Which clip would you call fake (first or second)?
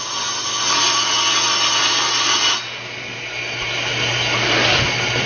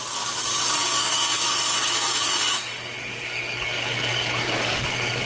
second